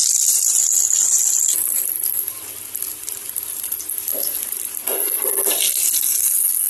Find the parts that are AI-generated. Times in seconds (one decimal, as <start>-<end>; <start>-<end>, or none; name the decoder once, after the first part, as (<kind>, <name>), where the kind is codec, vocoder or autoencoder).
none